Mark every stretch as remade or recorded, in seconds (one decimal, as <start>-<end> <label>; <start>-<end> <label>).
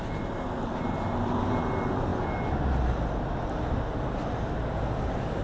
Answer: 0.0-5.4 recorded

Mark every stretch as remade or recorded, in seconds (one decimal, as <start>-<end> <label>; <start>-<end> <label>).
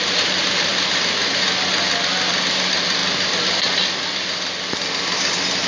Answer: 0.0-5.7 recorded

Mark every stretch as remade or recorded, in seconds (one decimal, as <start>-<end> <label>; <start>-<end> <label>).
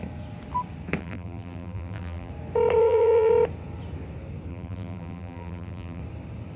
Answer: 0.0-1.0 recorded; 1.0-2.3 remade; 2.3-2.8 recorded; 2.8-3.3 remade; 3.3-4.5 recorded; 4.5-6.0 remade; 6.0-6.6 recorded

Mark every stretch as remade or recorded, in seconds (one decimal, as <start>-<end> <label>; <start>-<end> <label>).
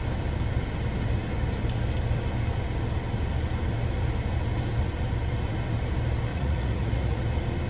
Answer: 0.0-6.3 recorded; 6.3-7.2 remade; 7.2-7.7 recorded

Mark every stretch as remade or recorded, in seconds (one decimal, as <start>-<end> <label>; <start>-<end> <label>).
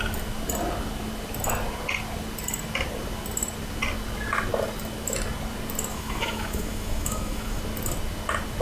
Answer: 0.0-5.9 recorded; 5.9-7.6 remade; 7.6-8.6 recorded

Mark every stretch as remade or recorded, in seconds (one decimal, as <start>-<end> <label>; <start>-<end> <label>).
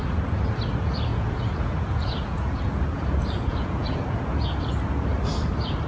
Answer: 0.0-1.1 recorded; 1.1-4.6 remade; 4.6-5.9 recorded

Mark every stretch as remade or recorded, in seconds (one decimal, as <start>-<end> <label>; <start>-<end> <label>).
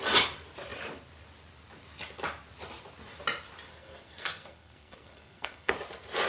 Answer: 0.0-3.7 recorded; 3.7-5.7 remade; 5.7-6.3 recorded